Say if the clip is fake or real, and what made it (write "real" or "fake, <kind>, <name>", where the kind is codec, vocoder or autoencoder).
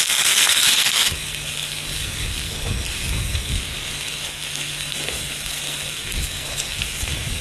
fake, codec, SNAC